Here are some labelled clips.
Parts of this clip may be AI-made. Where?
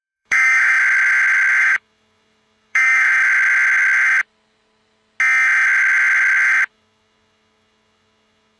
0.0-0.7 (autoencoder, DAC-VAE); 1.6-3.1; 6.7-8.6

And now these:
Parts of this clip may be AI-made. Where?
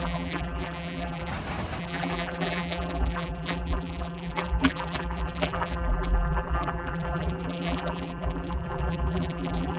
0.0-1.3 (vocoder, BigVGAN v2); 1.8-9.8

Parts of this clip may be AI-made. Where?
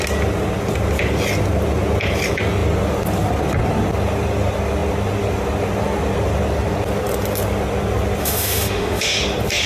8.2-9.2 (autoencoder, DAC-VAE)